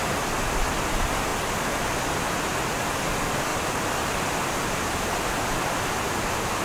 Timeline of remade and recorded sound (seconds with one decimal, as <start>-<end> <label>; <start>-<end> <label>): 0.0-3.5 recorded; 3.5-5.0 remade; 5.0-6.6 recorded